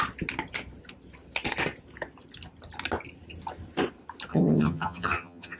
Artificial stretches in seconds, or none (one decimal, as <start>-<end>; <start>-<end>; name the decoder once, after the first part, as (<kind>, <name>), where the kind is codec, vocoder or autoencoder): 4.3-5.6 (vocoder, HiFi-GAN)